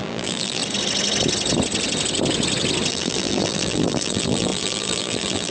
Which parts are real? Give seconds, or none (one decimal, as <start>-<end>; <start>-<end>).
0.6-2.9